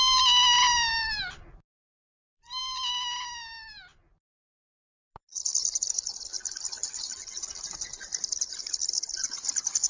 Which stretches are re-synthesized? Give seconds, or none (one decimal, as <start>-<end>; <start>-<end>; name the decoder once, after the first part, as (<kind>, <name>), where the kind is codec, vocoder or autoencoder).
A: 2.0-2.6 (vocoder, BigVGAN v2); 7.9-9.9